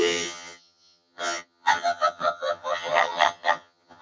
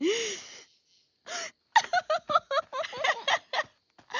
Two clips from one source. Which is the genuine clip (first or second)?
second